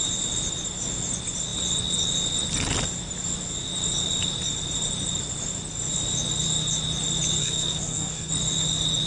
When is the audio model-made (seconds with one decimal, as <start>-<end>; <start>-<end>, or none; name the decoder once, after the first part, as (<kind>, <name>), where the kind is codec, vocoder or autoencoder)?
7.4-8.3 (codec, SNAC)